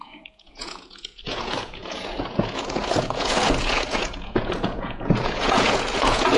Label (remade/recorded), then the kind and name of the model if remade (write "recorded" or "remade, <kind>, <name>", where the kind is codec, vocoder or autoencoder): remade, vocoder, Vocos